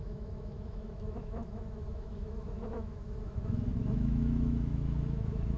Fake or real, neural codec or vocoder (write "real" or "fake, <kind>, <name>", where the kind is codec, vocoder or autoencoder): fake, autoencoder, DAC-VAE